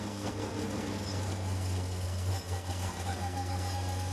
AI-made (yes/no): yes